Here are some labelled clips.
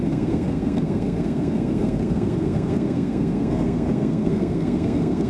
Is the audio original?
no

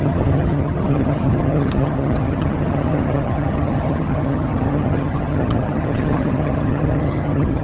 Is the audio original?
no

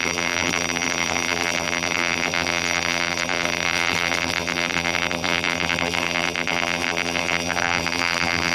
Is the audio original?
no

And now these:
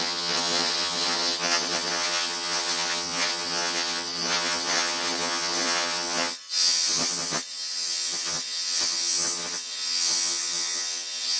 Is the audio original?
no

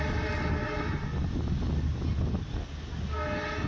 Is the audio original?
yes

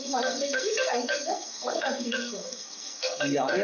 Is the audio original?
no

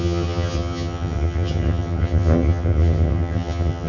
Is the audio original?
no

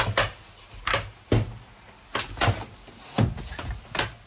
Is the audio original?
yes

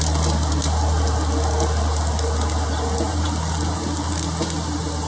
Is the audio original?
yes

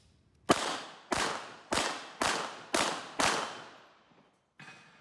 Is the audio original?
yes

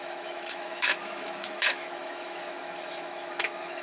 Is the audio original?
no